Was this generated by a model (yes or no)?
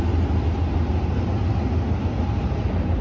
no